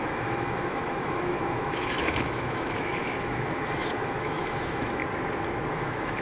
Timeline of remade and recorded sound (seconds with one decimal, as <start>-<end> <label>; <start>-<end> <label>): 0.0-5.0 remade; 5.0-5.7 recorded; 5.7-6.2 remade